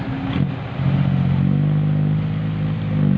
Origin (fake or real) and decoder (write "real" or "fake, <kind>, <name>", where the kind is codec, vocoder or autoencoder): real